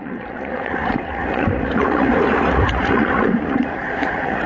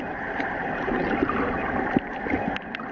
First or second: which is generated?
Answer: first